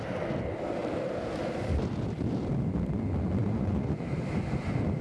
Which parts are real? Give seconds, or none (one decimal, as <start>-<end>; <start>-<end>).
0.0-3.4; 4.0-5.0